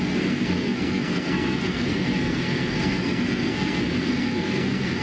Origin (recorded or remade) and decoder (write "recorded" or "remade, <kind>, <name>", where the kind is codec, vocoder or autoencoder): remade, codec, SNAC